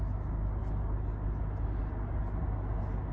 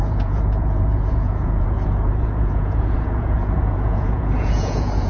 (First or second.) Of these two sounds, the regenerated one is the second